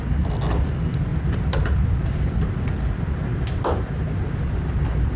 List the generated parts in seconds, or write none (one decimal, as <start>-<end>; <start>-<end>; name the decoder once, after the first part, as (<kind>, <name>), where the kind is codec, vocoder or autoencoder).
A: none